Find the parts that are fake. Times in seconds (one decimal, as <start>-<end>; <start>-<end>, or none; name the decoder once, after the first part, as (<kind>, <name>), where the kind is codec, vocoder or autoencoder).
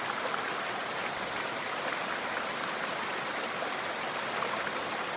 none